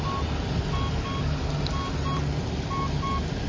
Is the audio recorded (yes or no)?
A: yes